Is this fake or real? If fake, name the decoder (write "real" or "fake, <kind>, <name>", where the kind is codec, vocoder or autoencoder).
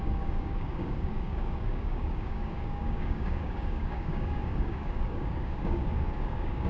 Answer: fake, codec, DAC